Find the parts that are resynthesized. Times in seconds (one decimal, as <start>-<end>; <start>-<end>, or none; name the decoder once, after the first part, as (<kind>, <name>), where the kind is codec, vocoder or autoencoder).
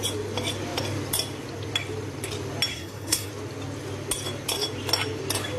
2.7-3.3 (codec, SNAC)